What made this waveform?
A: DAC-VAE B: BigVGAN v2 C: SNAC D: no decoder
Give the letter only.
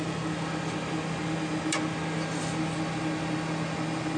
D